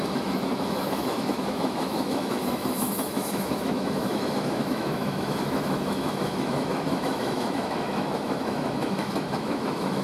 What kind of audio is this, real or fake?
fake